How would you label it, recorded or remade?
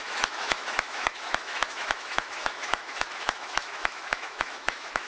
remade